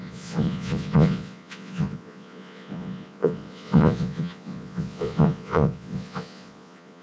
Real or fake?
fake